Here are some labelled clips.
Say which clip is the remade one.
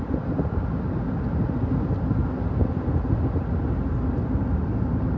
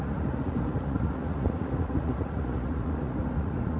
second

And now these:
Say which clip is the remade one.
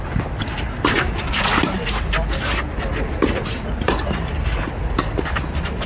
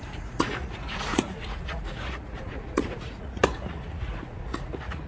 second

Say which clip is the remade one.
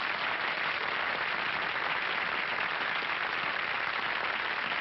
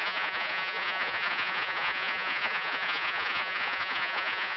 second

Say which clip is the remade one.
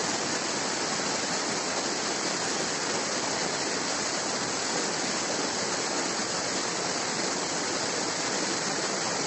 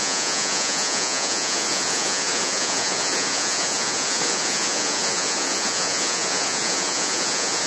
second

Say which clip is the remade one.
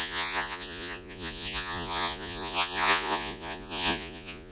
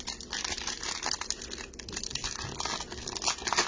first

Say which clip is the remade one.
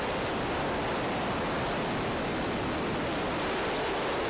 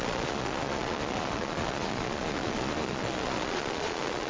second